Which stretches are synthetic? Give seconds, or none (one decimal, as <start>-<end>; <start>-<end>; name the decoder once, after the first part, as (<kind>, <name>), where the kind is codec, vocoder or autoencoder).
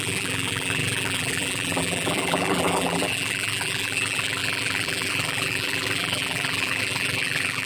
0.0-7.7 (vocoder, BigVGAN v2)